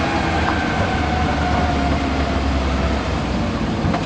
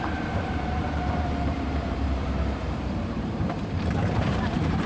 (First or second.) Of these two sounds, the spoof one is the second